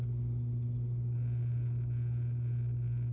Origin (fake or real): real